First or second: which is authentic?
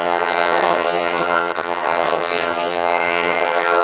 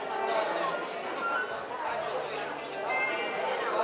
second